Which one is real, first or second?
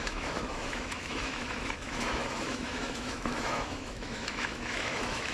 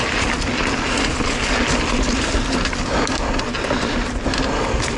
second